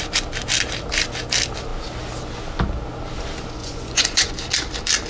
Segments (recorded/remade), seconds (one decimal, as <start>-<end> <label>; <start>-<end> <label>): 0.0-3.6 recorded; 3.6-4.3 remade; 4.3-5.1 recorded

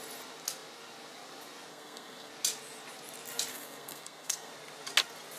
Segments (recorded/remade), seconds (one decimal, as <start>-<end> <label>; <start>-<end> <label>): 0.0-1.7 recorded; 1.7-2.3 remade; 2.3-3.5 recorded; 3.5-4.5 remade; 4.5-5.4 recorded